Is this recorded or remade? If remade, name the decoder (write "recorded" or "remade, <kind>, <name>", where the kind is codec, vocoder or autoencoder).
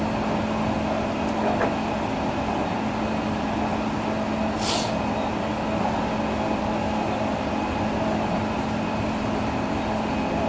recorded